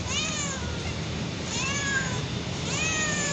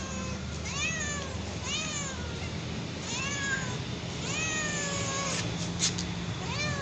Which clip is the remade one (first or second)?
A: first